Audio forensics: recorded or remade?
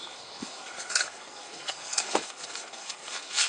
remade